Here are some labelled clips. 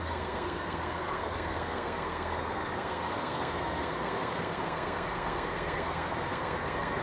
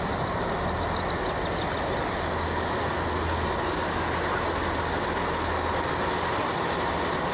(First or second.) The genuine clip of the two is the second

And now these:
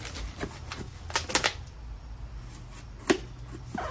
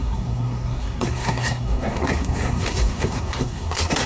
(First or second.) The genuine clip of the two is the first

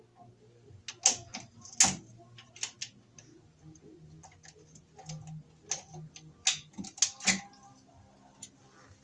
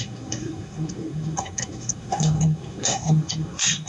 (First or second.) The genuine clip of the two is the first